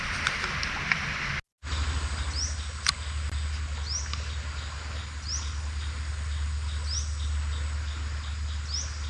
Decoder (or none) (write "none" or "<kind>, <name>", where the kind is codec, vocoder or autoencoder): none